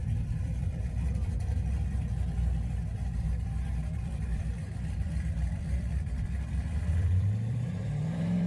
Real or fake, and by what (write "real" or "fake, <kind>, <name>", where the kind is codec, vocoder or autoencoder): fake, vocoder, BigVGAN v2